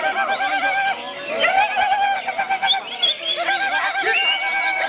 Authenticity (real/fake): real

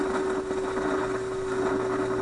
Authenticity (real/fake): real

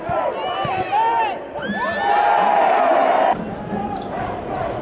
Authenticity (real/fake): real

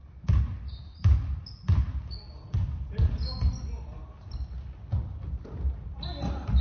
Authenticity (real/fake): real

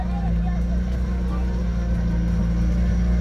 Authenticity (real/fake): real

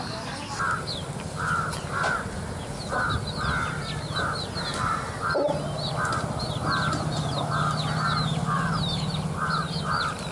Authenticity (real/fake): real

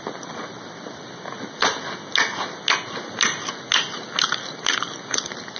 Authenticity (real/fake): real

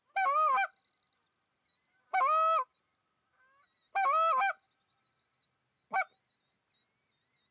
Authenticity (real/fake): real